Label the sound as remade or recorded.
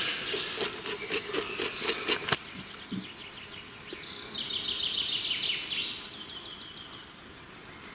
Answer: recorded